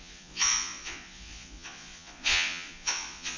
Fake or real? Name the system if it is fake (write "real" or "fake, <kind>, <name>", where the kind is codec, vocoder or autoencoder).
fake, vocoder, Vocos